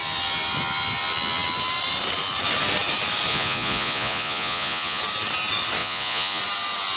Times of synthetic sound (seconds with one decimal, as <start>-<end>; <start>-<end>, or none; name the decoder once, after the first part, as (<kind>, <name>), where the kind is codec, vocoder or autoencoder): 3.3-5.0 (vocoder, Vocos); 5.8-6.4

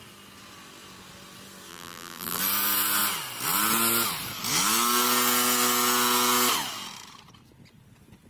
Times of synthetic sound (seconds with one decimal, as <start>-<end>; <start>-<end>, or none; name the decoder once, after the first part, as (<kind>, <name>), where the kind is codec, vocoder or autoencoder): 1.7-2.4 (vocoder, BigVGAN v2)